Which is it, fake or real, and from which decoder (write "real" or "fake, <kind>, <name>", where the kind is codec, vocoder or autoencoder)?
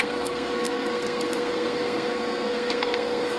fake, codec, SNAC